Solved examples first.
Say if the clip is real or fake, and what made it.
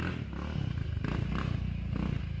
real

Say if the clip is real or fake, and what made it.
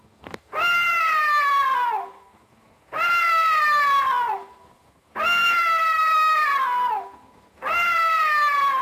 real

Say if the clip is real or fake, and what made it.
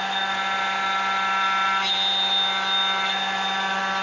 real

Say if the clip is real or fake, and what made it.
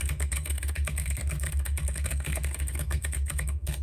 fake, codec, SNAC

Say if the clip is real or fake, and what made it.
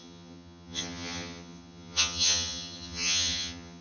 fake, vocoder, HiFi-GAN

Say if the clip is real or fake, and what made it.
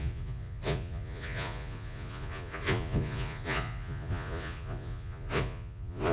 fake, vocoder, Vocos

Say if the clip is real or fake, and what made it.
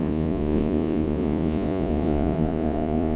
fake, vocoder, Vocos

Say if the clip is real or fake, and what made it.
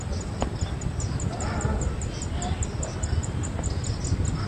real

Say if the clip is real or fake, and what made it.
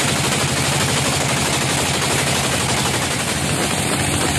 real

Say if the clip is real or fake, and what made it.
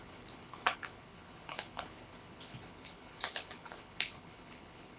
fake, codec, HILCodec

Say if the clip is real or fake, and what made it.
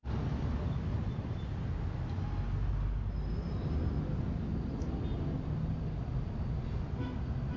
real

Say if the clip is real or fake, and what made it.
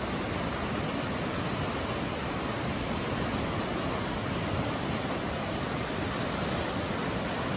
real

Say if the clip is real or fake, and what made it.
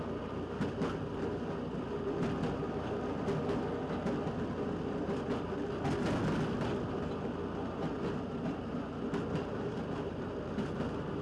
real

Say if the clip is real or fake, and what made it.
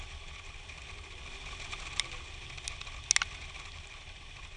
real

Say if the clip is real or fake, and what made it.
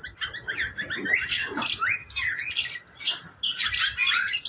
real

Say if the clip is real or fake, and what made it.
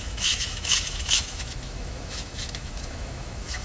fake, autoencoder, DAC-VAE